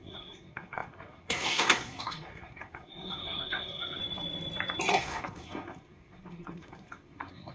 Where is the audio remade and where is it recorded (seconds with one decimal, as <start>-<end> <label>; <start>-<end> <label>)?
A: 0.0-4.0 remade; 4.0-4.9 recorded; 4.9-7.5 remade